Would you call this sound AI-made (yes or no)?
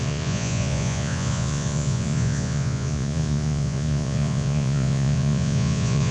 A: yes